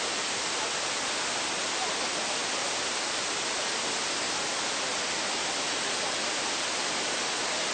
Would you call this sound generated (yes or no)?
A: no